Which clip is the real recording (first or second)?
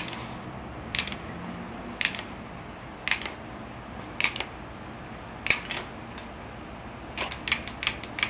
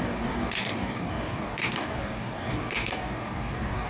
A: first